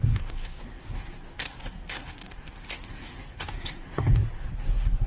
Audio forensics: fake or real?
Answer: fake